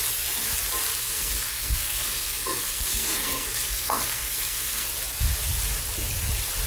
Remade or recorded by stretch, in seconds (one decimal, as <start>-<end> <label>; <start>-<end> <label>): 0.0-0.9 recorded; 0.9-4.9 remade; 4.9-6.7 recorded